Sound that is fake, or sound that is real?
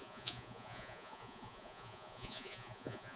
fake